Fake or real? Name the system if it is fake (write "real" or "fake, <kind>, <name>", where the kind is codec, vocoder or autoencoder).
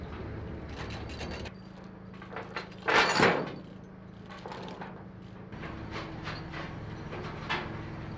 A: real